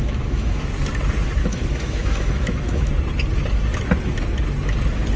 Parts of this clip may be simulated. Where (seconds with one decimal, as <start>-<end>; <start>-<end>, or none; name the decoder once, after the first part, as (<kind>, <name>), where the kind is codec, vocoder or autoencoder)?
0.0-0.6 (autoencoder, DAC-VAE); 1.4-2.9